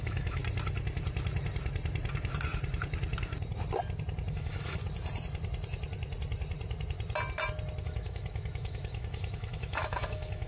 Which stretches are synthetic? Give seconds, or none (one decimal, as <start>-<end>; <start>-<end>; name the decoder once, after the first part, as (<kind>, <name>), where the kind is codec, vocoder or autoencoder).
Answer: 0.0-0.4 (autoencoder, DAC-VAE); 4.3-4.8; 7.8-10.5